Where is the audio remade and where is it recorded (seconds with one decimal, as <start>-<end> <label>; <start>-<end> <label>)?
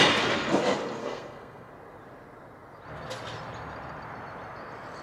0.0-1.0 recorded; 1.0-1.7 remade; 1.7-5.0 recorded